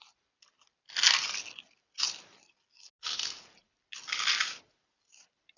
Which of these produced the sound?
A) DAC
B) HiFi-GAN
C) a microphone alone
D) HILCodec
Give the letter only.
C